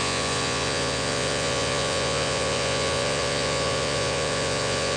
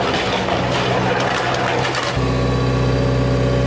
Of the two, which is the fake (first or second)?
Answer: first